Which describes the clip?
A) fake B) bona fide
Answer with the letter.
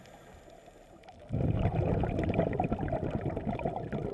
B